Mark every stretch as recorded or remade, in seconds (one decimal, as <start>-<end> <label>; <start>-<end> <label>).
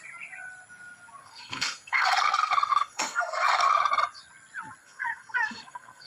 0.0-1.2 recorded; 1.2-3.9 remade; 3.9-4.8 recorded; 4.8-6.1 remade